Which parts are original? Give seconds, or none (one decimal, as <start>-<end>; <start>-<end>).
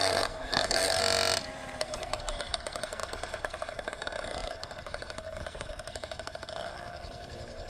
1.0-1.8